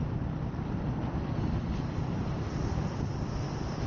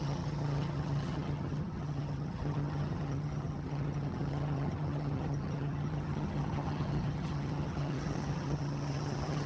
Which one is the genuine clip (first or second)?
first